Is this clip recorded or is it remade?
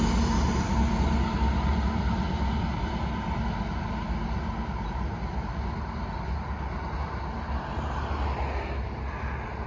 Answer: recorded